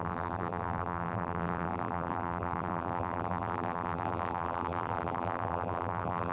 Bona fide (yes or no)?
no